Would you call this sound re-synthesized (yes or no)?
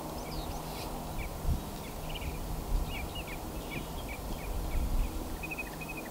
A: no